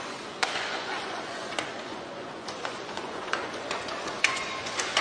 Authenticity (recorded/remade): remade